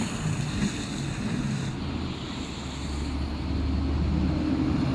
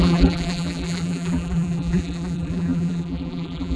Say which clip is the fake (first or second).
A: second